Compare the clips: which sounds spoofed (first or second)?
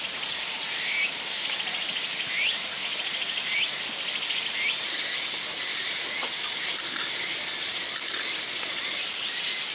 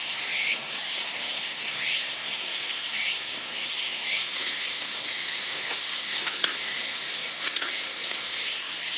second